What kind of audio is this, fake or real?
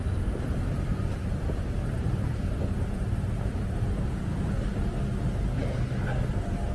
real